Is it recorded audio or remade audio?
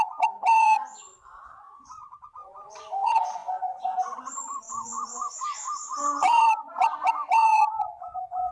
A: remade